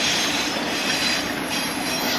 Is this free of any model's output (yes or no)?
no